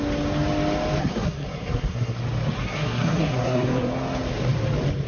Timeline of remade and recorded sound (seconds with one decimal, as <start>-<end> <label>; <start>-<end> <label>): 0.0-1.0 recorded; 1.0-2.2 remade; 2.2-2.6 recorded; 2.6-3.9 remade; 3.9-5.1 recorded